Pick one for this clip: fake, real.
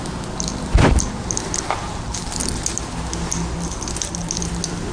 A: real